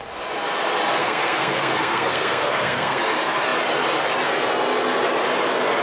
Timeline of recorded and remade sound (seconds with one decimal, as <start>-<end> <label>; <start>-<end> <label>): 0.0-1.0 recorded; 1.0-3.0 remade; 3.0-5.8 recorded